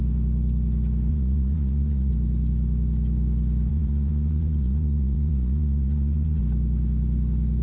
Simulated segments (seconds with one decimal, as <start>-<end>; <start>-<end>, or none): 1.1-2.1; 3.7-6.4